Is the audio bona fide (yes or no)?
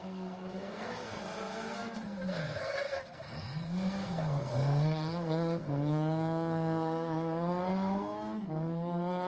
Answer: no